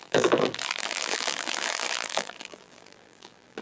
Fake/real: fake